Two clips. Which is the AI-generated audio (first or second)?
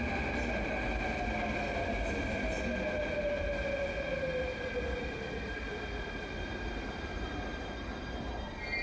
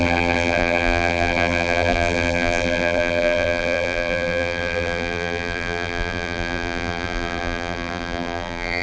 second